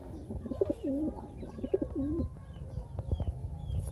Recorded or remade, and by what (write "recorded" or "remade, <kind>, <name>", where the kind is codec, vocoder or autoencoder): recorded